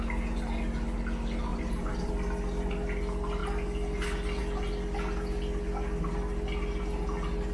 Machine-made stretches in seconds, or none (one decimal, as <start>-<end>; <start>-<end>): 1.5-2.1